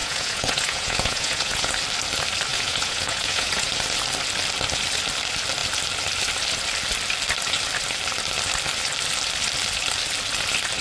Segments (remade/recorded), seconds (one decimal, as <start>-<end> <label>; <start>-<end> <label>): 0.0-1.7 remade; 1.7-2.5 recorded; 2.5-3.7 remade; 3.7-10.8 recorded